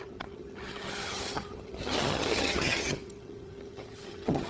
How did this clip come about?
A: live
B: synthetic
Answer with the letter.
B